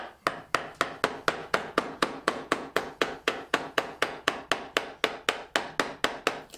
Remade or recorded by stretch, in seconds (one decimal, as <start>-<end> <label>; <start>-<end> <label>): 0.0-1.4 recorded; 1.4-4.4 remade; 4.4-6.6 recorded